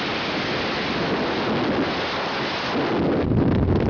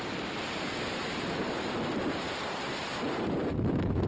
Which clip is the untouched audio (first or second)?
first